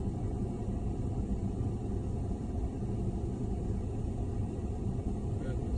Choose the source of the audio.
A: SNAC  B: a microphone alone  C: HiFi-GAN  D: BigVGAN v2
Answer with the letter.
D